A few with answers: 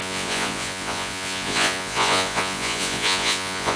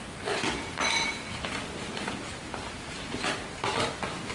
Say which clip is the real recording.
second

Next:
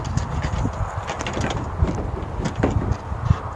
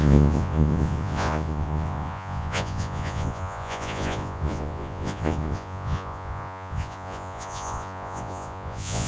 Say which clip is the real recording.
first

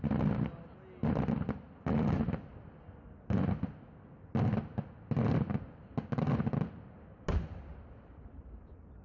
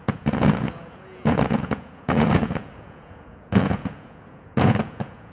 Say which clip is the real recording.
first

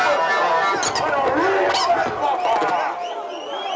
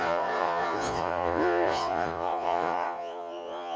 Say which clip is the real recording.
first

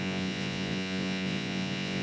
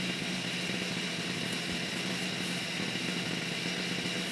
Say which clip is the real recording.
second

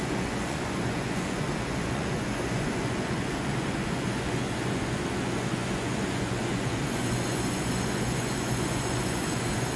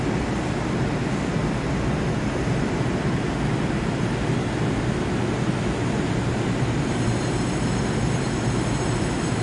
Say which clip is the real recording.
second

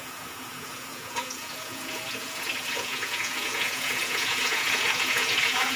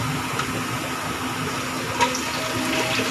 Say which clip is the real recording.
second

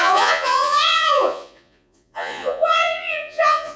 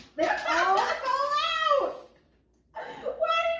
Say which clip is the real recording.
second